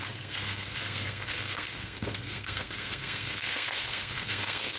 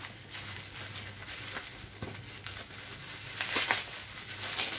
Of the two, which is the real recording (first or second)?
second